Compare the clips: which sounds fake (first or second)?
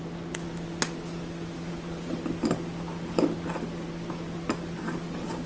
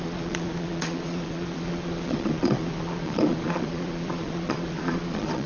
second